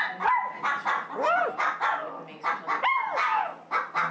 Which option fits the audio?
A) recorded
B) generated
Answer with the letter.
A